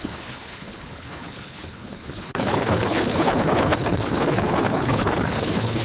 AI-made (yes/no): yes